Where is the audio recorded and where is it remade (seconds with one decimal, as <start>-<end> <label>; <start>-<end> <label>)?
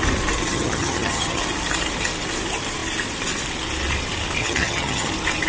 0.0-0.5 recorded; 0.5-1.4 remade; 1.4-4.4 recorded; 4.4-5.1 remade; 5.1-5.5 recorded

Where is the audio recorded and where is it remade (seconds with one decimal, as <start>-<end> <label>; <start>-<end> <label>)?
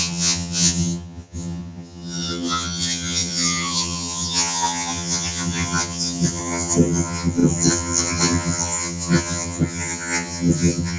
0.0-11.0 remade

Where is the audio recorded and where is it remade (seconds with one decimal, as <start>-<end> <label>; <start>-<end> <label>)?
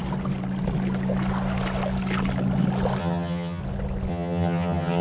0.0-3.0 recorded; 3.0-3.6 remade; 3.6-4.1 recorded; 4.1-5.0 remade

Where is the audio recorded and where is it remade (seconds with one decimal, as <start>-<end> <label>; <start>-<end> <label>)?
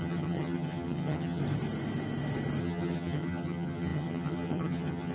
0.0-1.4 remade; 1.4-2.6 recorded; 2.6-5.1 remade